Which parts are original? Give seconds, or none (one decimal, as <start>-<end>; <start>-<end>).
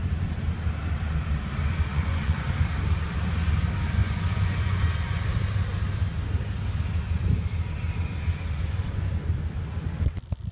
0.0-1.9; 2.5-4.0; 4.8-8.3; 9.1-10.5